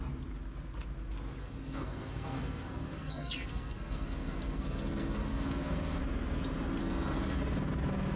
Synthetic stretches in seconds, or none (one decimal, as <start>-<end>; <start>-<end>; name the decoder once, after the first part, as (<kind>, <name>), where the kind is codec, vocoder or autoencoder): 1.4-6.0 (codec, SNAC); 6.8-7.4

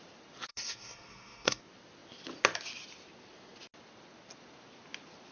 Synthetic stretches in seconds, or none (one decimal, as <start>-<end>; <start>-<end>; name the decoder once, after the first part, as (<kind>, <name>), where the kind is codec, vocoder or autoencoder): 0.5-1.6 (codec, SNAC)

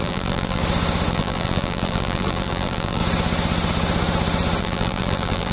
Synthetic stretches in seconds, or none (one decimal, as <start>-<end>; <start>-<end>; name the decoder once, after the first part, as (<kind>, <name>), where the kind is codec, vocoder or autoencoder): 0.0-0.6 (vocoder, BigVGAN v2); 1.1-3.0; 4.6-5.5

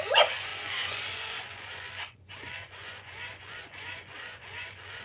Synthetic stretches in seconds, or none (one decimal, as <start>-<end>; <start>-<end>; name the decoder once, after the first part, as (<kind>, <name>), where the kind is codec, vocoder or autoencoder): 0.0-5.0 (vocoder, Vocos)

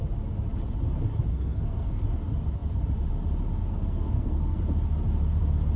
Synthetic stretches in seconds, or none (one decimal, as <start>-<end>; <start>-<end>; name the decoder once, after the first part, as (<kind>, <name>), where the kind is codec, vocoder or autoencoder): 1.3-2.0 (codec, SNAC); 3.6-4.6